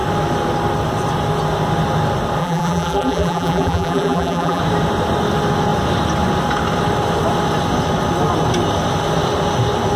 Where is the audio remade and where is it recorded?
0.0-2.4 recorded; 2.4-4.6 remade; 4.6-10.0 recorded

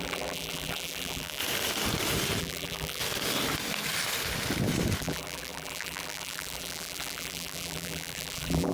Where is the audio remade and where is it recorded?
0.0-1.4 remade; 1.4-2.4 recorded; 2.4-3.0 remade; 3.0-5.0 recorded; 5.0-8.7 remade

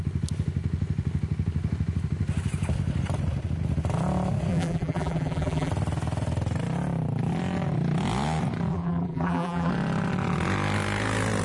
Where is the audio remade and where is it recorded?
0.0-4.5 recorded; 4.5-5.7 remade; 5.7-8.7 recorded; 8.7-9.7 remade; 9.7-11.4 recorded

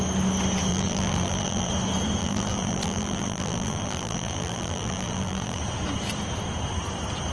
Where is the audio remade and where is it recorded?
0.0-0.7 recorded; 0.7-1.7 remade; 1.7-2.2 recorded; 2.2-5.6 remade; 5.6-7.3 recorded